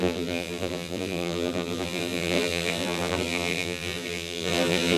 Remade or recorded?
remade